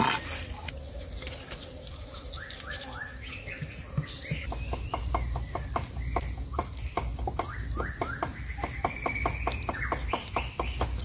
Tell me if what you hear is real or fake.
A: real